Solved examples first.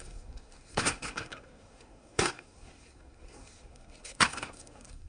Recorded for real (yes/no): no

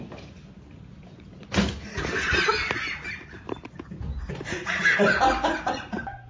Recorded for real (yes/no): yes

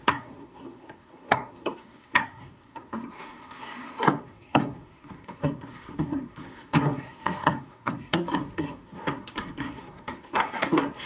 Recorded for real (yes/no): no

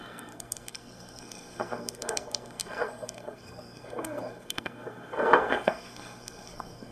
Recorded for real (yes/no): no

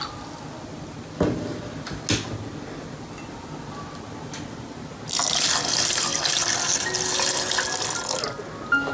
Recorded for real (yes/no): yes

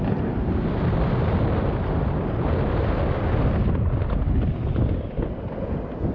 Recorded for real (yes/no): yes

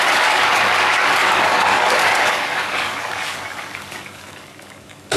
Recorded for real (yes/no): no